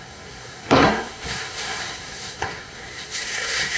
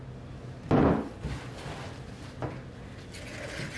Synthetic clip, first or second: first